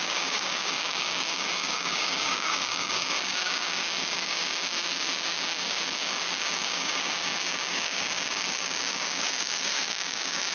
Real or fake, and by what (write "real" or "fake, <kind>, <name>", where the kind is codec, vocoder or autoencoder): fake, codec, DAC